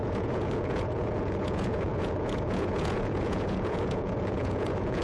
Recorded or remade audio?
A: remade